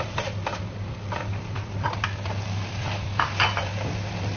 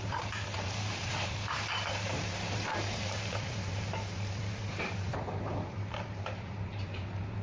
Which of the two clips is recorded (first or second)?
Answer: first